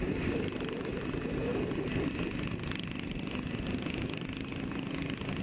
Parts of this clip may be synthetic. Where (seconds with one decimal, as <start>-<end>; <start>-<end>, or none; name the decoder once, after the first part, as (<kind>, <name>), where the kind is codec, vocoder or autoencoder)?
none